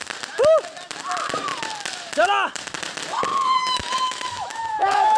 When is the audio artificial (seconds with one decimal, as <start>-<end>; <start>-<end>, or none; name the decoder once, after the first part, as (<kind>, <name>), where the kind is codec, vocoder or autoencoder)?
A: 3.3-5.2 (autoencoder, DAC-VAE)